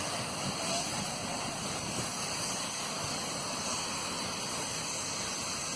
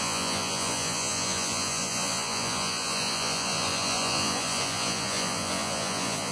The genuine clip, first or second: first